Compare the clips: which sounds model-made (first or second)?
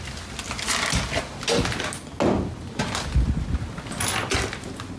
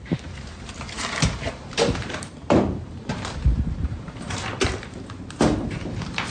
second